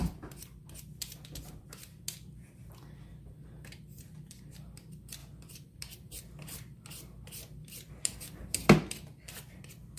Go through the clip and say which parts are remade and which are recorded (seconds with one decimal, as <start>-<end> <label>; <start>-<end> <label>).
0.0-10.0 recorded